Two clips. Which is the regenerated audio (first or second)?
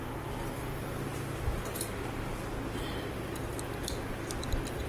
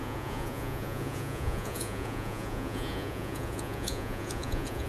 second